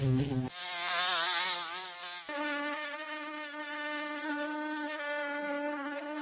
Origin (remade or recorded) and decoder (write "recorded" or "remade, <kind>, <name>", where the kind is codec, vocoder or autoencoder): recorded